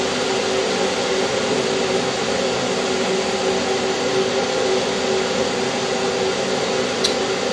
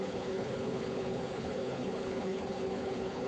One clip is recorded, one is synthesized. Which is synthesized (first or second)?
second